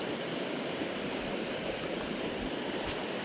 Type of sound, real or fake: real